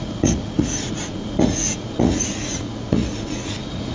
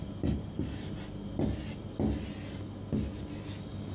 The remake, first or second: first